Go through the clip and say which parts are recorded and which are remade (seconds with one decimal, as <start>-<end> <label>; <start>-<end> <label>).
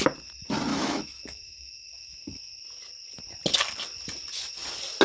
0.0-0.7 recorded; 0.7-2.5 remade; 2.5-5.0 recorded